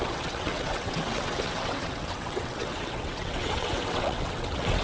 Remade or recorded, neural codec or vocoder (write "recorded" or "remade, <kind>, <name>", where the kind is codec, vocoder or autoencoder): remade, vocoder, WaveNeXt